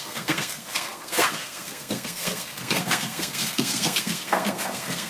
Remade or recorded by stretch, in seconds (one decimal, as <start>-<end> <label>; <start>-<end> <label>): 0.0-5.1 remade